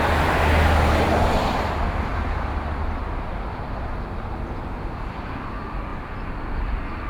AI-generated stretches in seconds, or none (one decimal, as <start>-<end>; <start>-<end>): none